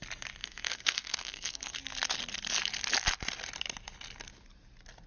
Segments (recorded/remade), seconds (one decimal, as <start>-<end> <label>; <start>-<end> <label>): 0.0-0.4 recorded; 0.4-1.7 remade; 1.7-5.1 recorded